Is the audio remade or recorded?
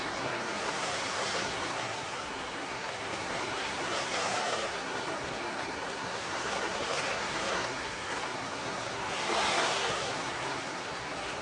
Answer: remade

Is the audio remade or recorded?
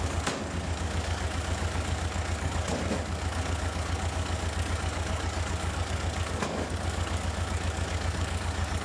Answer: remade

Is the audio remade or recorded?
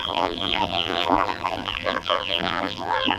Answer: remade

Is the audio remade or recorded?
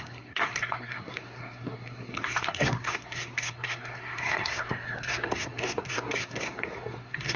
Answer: remade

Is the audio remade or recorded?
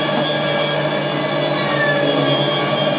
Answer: recorded